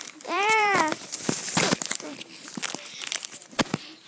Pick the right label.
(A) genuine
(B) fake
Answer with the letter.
B